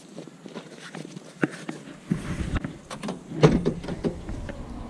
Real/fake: real